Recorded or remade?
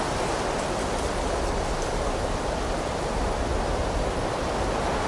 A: remade